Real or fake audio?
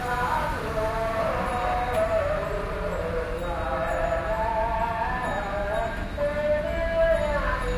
real